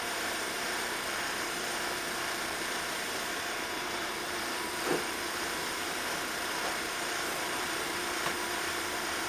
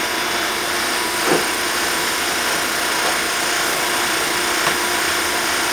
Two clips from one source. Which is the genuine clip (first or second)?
second